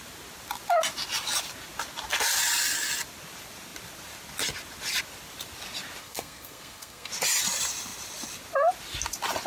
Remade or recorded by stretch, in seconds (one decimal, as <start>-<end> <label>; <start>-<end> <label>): 0.0-6.0 recorded; 6.0-7.1 remade; 7.1-9.5 recorded